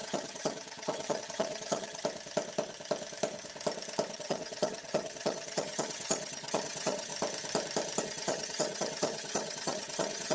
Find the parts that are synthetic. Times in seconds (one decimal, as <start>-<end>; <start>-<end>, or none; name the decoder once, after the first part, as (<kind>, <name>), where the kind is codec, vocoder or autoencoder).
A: 0.0-2.0 (vocoder, HiFi-GAN); 4.1-7.1; 8.0-10.3